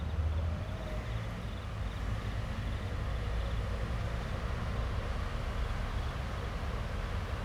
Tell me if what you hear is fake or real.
real